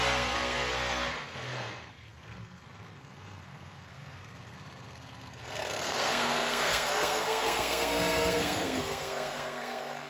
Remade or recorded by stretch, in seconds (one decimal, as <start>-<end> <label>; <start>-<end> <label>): 0.0-10.1 remade